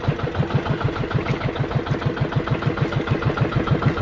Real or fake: real